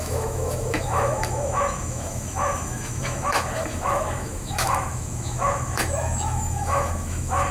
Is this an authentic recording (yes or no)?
no